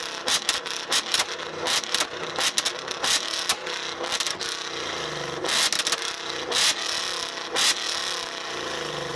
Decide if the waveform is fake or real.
real